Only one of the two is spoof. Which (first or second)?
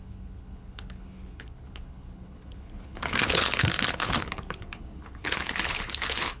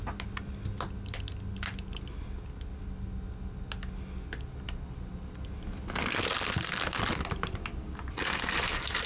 first